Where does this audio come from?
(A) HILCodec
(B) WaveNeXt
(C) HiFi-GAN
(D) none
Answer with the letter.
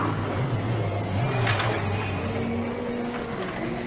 D